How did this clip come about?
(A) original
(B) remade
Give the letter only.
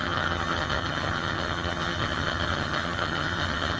B